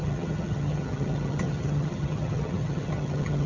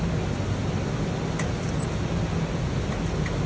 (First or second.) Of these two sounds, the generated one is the first